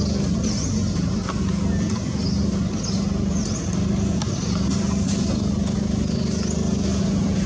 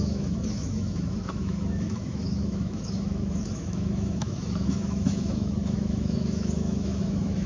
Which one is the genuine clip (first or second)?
first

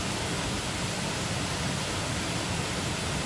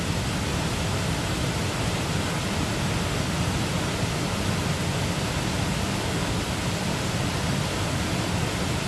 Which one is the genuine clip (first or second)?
second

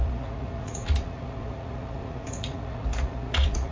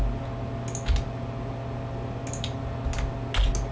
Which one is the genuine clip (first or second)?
second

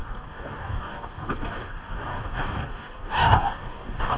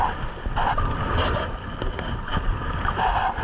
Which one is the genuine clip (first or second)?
second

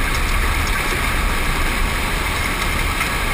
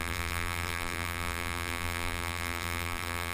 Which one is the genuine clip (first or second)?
first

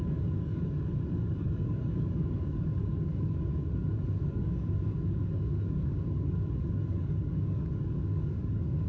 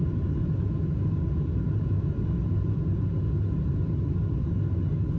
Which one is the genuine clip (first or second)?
second